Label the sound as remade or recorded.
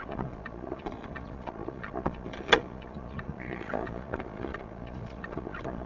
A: remade